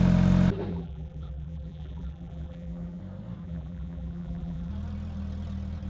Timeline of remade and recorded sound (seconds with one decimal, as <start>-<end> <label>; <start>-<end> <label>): 0.0-0.7 recorded; 0.7-3.0 remade; 3.0-3.4 recorded; 3.4-4.7 remade; 4.7-5.9 recorded